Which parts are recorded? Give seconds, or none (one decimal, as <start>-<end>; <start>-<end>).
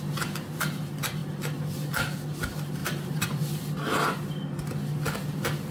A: 0.0-2.8; 3.4-5.7